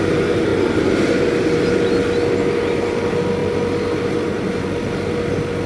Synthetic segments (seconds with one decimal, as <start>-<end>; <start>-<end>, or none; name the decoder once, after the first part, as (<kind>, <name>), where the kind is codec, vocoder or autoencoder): none